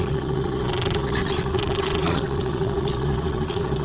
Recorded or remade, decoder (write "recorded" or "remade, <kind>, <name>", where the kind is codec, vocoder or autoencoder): remade, vocoder, Vocos